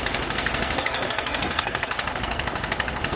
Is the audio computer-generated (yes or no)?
yes